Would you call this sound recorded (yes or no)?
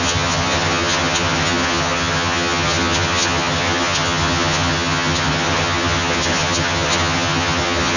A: no